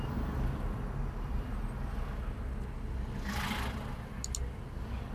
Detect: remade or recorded recorded